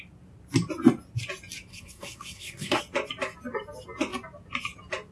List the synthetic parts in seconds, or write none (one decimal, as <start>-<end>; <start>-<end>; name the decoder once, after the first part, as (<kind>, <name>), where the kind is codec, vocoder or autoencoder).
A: 1.7-2.8 (codec, SNAC)

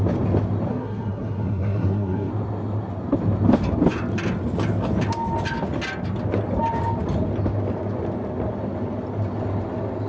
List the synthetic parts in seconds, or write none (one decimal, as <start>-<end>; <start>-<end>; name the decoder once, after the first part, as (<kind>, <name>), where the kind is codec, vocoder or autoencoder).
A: 0.7-2.3 (codec, SNAC)

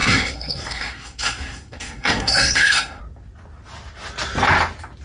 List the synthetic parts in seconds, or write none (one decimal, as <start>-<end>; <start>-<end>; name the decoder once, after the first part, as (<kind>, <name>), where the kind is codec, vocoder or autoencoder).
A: 0.0-3.0 (codec, SNAC)

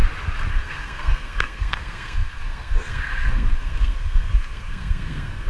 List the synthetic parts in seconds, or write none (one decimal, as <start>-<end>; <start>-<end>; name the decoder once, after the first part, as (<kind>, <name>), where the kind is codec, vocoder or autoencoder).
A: 0.5-5.5 (codec, SNAC)

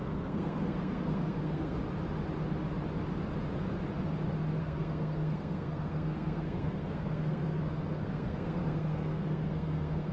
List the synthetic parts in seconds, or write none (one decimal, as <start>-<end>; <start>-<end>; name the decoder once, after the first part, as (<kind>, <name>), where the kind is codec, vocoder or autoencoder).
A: 0.0-1.8 (codec, SNAC); 4.6-10.1

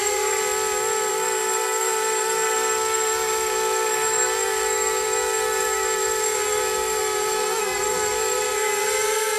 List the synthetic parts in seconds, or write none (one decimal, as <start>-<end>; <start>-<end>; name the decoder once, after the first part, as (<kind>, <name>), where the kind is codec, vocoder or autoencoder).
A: 0.0-0.4 (codec, SNAC); 1.1-9.4

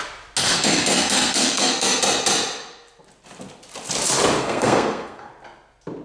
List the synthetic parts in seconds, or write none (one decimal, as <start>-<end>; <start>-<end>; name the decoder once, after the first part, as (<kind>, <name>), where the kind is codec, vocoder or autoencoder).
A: 0.4-2.0 (codec, SNAC); 4.4-5.3

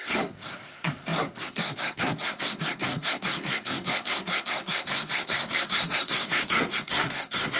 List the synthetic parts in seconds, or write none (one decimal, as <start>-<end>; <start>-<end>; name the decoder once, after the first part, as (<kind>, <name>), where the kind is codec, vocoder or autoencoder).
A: 0.0-7.6 (codec, SNAC)